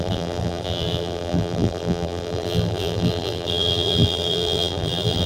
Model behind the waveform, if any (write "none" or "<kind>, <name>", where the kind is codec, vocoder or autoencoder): vocoder, BigVGAN v2